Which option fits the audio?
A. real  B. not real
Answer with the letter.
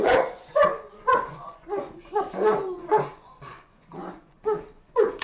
B